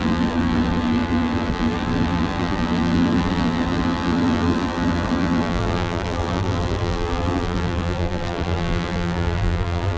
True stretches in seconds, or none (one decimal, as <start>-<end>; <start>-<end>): none